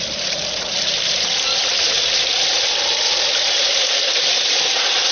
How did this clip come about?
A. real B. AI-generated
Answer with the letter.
B